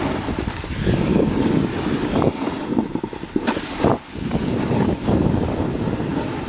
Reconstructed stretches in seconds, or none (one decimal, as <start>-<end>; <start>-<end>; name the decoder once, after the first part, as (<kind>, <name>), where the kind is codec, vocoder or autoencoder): none